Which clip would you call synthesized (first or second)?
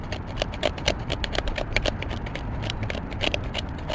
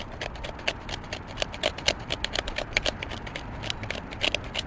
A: first